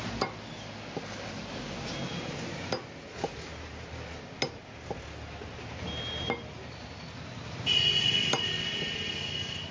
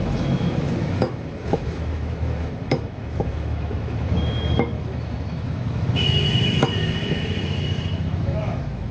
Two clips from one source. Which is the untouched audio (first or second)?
first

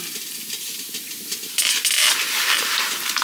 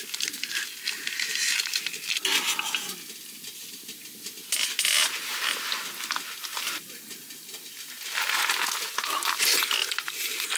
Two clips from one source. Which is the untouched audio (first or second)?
second